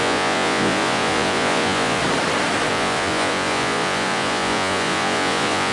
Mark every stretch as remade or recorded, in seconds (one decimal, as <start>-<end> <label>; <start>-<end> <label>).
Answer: 0.0-2.0 remade; 2.0-2.7 recorded; 2.7-5.7 remade